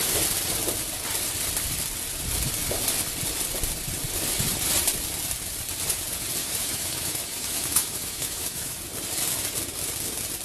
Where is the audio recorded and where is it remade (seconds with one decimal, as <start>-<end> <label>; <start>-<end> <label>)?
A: 0.0-6.4 recorded; 6.4-8.8 remade; 8.8-10.4 recorded

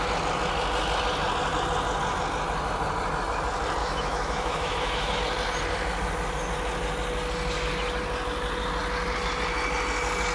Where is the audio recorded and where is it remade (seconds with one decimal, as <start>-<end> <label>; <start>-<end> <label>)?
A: 0.0-3.8 recorded; 3.8-5.2 remade; 5.2-10.3 recorded